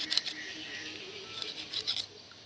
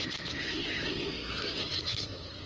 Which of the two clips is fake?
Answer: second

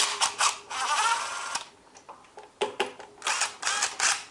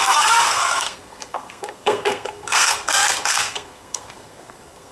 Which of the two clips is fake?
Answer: second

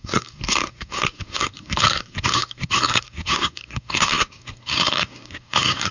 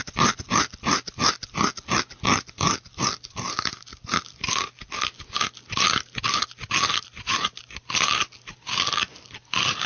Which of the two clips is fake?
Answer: first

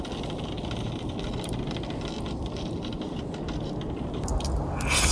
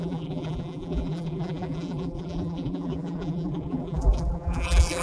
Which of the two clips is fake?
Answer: second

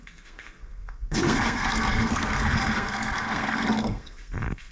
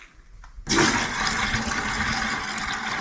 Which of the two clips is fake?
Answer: first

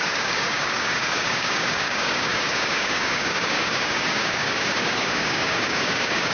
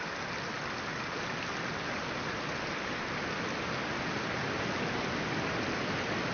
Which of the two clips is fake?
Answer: first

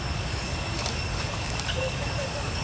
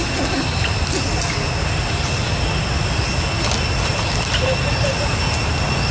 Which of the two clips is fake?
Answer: first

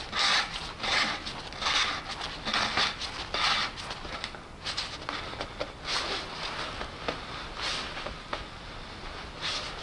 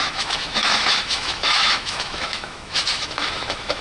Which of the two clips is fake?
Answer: second